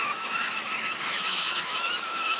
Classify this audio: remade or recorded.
remade